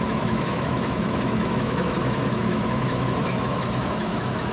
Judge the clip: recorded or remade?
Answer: remade